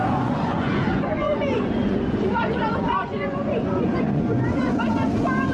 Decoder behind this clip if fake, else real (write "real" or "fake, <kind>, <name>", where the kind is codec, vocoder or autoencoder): fake, vocoder, Vocos